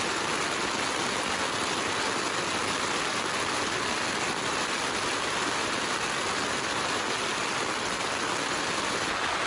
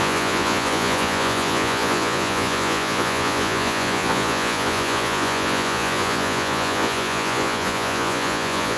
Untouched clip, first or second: first